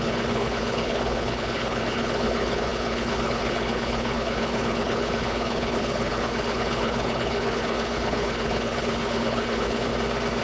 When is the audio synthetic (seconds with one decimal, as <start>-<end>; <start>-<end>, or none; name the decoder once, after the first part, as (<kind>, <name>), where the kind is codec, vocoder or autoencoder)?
0.0-9.9 (codec, HILCodec)